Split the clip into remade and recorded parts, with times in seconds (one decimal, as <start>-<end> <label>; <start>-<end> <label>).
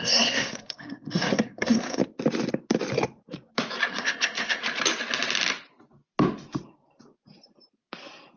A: 0.0-2.0 remade; 2.0-3.9 recorded; 3.9-4.6 remade; 4.6-8.4 recorded